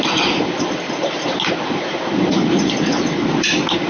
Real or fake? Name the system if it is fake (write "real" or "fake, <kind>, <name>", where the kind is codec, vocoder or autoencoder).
real